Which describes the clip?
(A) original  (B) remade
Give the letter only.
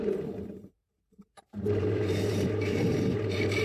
B